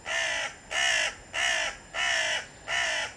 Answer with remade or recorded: recorded